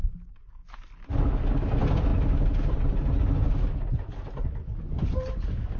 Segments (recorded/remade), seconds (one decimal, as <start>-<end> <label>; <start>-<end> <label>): 0.0-5.8 recorded